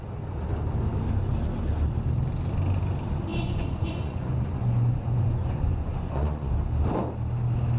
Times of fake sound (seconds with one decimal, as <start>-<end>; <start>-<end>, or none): 3.3-6.5